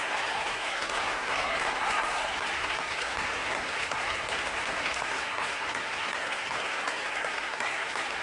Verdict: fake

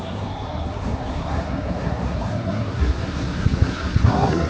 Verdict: fake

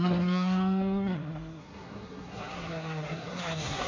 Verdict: fake